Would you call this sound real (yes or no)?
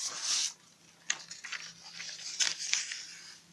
yes